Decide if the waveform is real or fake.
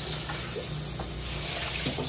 real